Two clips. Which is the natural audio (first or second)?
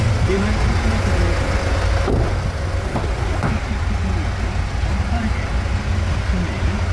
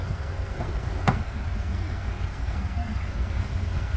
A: first